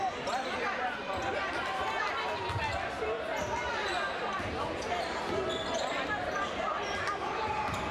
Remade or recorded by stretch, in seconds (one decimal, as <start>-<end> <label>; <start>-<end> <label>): 0.0-7.9 recorded